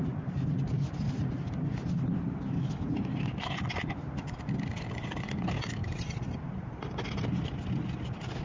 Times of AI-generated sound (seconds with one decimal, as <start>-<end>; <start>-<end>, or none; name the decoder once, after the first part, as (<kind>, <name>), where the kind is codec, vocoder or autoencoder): 5.8-6.8 (vocoder, BigVGAN v2)